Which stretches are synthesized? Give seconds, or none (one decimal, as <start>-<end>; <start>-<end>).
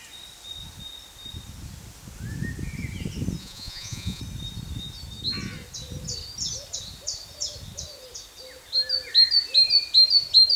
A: 3.4-4.2